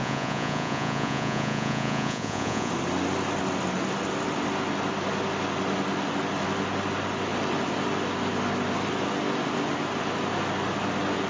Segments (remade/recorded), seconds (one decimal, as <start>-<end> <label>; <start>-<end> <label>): 0.0-2.7 remade; 2.7-11.3 recorded